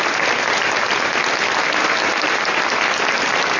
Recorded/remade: recorded